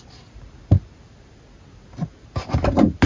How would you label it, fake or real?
real